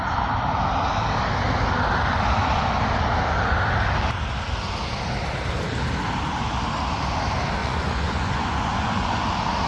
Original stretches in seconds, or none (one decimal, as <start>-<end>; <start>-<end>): 0.0-7.6; 9.2-9.7